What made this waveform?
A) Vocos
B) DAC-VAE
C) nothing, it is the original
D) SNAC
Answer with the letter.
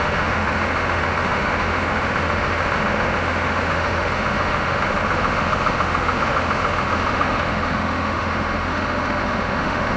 B